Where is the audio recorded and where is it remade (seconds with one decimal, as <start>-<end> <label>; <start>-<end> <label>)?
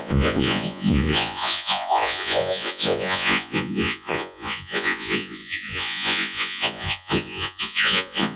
0.0-8.4 remade